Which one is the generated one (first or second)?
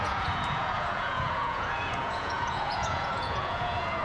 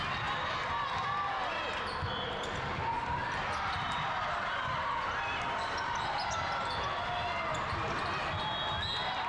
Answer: first